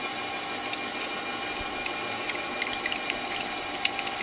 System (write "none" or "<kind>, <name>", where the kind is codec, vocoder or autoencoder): none